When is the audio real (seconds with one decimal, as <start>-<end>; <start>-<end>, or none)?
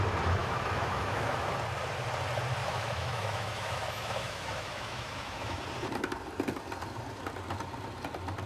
0.0-0.4; 1.5-2.6; 5.6-8.5